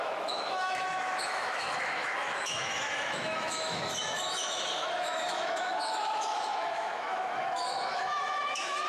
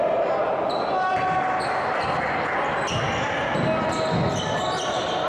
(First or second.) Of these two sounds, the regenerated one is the first